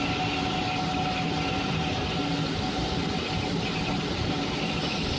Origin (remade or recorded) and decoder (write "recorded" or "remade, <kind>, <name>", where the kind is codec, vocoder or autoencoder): recorded